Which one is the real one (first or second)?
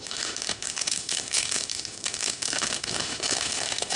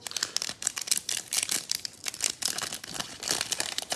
second